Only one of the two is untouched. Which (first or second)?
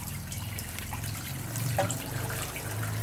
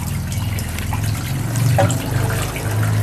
second